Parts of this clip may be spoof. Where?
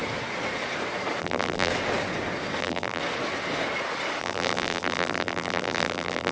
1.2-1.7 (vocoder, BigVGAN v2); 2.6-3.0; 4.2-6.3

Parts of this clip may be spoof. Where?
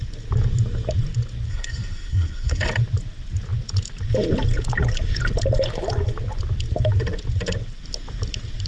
1.5-2.6 (codec, SNAC)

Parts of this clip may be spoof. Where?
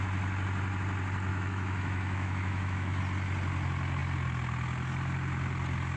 1.3-3.0 (autoencoder, DAC-VAE)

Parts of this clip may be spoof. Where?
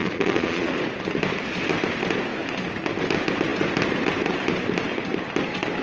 0.0-0.7 (vocoder, Vocos)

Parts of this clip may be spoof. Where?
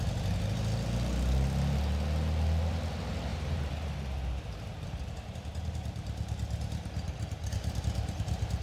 3.3-7.8 (vocoder, BigVGAN v2)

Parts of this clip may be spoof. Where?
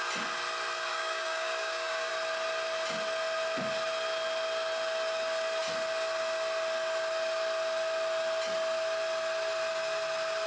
0.9-2.1 (codec, DAC)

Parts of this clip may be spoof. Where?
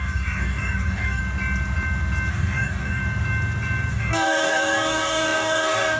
0.0-1.2 (codec, DAC); 2.3-3.0; 3.9-6.0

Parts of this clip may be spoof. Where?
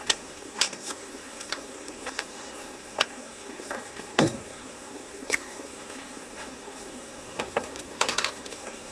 0.0-8.9 (codec, SNAC)